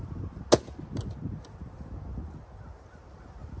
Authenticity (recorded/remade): recorded